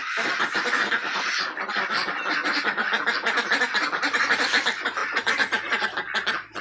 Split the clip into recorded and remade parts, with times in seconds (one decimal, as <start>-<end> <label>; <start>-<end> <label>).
0.0-6.6 recorded

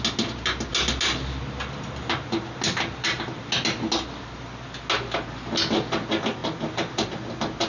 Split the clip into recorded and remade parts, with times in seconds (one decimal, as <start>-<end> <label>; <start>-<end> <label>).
0.0-7.7 recorded